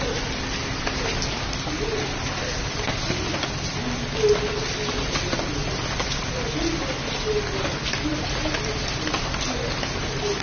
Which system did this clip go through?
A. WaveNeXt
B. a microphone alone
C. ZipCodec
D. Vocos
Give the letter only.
B